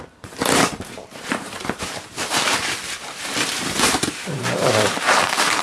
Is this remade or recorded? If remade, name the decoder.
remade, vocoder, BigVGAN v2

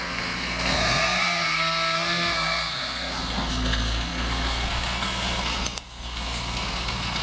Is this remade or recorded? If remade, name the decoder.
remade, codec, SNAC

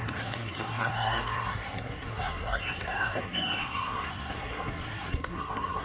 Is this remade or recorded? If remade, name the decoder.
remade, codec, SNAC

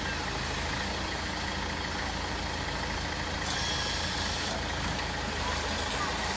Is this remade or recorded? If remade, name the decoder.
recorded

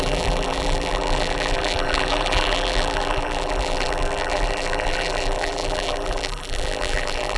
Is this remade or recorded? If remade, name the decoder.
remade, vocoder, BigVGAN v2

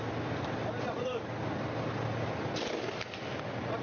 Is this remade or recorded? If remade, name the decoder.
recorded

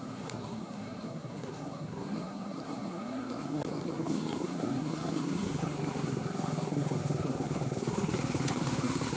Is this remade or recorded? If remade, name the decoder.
remade, codec, SNAC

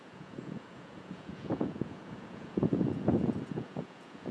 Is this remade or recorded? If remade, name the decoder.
remade, vocoder, Vocos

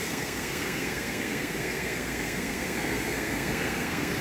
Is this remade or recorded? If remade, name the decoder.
remade, codec, SNAC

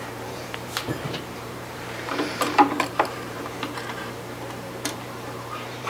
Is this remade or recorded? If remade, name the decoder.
remade, vocoder, BigVGAN v2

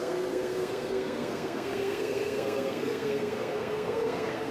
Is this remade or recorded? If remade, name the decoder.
remade, codec, SNAC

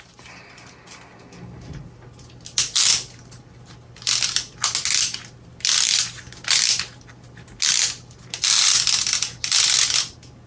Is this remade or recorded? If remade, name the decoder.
recorded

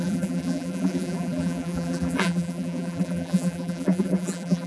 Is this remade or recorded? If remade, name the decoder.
remade, vocoder, BigVGAN v2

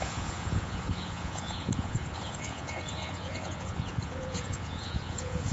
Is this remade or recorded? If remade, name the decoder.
remade, vocoder, Vocos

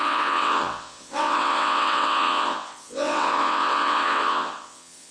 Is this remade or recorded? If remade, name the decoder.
remade, vocoder, WaveNeXt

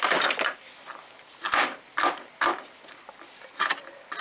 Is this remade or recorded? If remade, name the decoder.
recorded